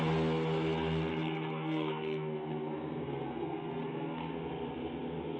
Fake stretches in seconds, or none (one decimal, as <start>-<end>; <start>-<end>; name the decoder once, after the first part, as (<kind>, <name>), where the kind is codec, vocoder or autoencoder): 1.1-4.3 (codec, SNAC)